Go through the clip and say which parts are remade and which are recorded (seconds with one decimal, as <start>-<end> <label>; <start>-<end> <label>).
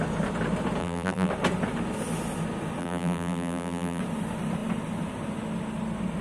0.0-0.8 recorded; 0.8-1.3 remade; 1.3-2.8 recorded; 2.8-4.0 remade; 4.0-6.2 recorded